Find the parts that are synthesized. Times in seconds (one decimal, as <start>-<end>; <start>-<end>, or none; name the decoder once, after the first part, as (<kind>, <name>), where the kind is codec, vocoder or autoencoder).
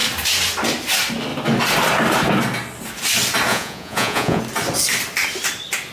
3.5-4.4 (vocoder, Vocos)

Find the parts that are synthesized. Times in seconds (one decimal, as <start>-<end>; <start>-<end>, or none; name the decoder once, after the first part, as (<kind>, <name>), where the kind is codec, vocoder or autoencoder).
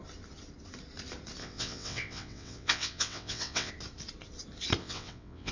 1.4-3.7 (vocoder, WaveNeXt); 4.8-5.5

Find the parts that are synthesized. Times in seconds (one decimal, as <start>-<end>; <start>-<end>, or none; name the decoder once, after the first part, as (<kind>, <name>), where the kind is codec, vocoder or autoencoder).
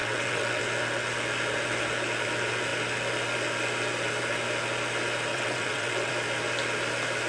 0.0-0.6 (vocoder, WaveNeXt); 5.3-6.1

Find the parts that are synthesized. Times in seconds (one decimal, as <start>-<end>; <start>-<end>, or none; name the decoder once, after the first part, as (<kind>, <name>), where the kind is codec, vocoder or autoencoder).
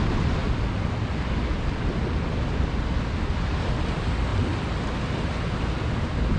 none